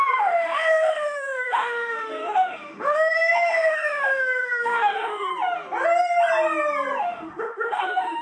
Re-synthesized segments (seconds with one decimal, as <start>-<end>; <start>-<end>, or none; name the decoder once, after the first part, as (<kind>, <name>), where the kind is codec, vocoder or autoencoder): 0.0-5.3 (autoencoder, DAC-VAE); 7.0-8.2